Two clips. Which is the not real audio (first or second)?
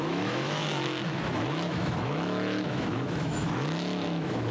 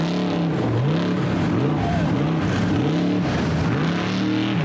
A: first